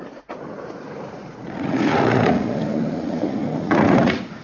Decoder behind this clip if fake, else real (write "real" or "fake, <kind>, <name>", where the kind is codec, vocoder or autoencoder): fake, vocoder, Vocos